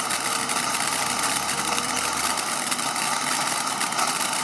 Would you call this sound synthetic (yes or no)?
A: no